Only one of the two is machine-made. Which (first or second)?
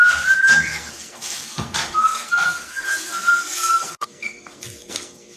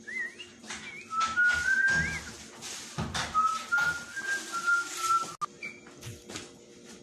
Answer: first